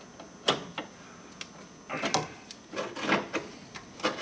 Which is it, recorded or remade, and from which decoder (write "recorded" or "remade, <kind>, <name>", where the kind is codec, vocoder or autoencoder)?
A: recorded